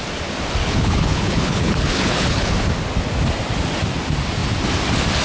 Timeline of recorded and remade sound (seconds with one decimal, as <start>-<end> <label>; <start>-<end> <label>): 0.0-0.6 recorded; 0.6-2.5 remade; 2.5-5.2 recorded